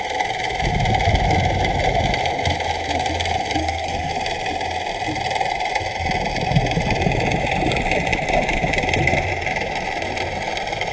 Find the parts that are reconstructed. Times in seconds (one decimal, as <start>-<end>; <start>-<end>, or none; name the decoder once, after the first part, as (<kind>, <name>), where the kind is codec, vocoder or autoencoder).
3.6-4.1 (codec, SNAC)